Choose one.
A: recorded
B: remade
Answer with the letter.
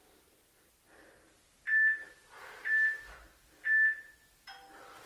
A